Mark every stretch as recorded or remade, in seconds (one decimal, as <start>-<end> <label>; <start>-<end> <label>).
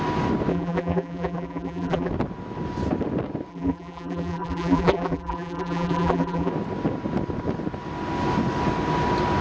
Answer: 0.0-0.5 recorded; 0.5-2.1 remade; 2.1-3.5 recorded; 3.5-6.5 remade; 6.5-9.4 recorded